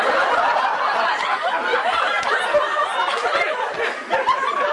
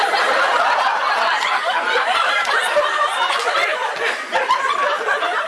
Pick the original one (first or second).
first